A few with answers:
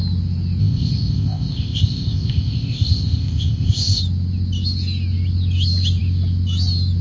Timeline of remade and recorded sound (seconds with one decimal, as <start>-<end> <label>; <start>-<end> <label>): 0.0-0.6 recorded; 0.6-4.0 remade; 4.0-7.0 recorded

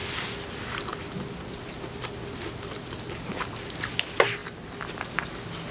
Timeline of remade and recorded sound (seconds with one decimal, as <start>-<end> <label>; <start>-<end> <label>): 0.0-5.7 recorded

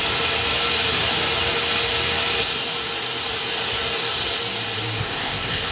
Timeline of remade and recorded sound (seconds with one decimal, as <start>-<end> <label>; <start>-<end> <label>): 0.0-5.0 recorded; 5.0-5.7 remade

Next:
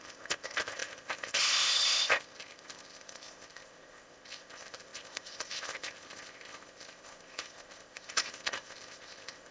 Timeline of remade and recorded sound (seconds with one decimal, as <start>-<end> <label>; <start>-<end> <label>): 0.0-9.5 remade

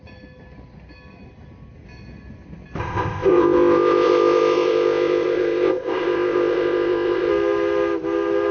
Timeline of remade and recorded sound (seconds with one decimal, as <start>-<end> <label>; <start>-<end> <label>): 0.0-2.8 recorded; 2.8-7.3 remade; 7.3-8.5 recorded